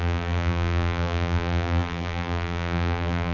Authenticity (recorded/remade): remade